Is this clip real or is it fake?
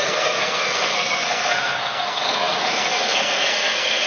fake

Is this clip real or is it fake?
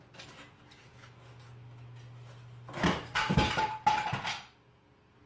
real